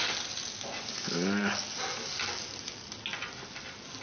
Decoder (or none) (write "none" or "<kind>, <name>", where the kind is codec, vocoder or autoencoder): none